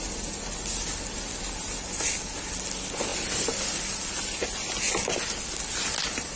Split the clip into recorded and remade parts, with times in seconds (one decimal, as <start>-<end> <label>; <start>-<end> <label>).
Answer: 0.0-6.4 recorded